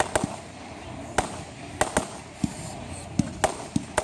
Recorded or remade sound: recorded